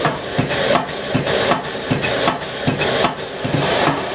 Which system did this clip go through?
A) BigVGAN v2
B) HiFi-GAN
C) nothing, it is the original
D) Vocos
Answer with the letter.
C